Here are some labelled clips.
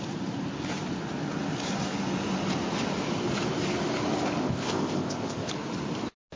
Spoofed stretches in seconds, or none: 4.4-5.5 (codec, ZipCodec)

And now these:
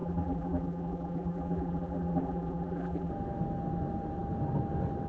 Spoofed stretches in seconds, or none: 0.0-3.1 (vocoder, BigVGAN v2)